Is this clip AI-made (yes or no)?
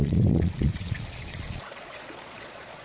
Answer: yes